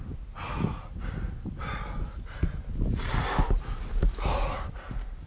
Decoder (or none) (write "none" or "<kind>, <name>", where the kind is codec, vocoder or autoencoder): none